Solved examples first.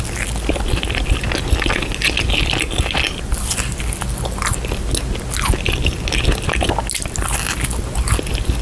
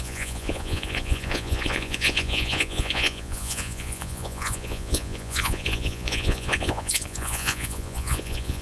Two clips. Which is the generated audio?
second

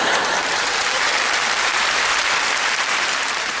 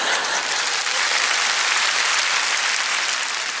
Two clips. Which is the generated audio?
first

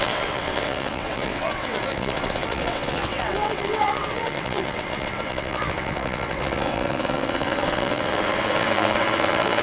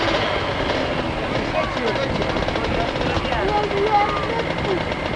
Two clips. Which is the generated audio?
first